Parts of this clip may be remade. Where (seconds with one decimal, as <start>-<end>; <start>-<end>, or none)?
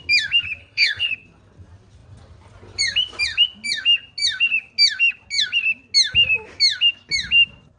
0.6-1.1